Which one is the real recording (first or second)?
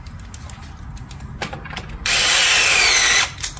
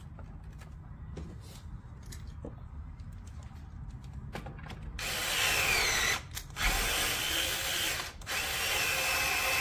second